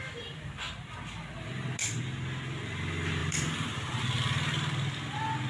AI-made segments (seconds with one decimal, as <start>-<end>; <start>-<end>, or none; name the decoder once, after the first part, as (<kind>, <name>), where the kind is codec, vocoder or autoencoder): 3.2-4.0 (vocoder, BigVGAN v2)